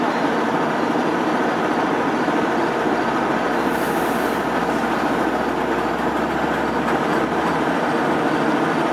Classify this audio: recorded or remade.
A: recorded